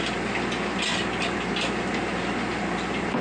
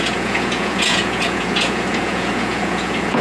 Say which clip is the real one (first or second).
first